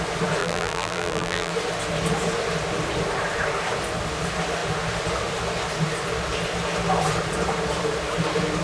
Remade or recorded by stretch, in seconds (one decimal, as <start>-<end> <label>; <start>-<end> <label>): 0.0-0.4 recorded; 0.4-1.5 remade; 1.5-8.6 recorded